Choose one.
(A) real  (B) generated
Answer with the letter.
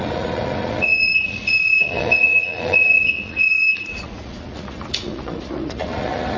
B